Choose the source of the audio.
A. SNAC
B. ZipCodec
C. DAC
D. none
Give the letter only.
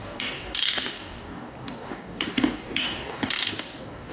C